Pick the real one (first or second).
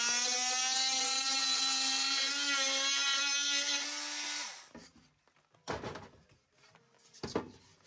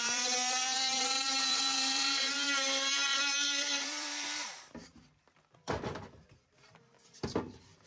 first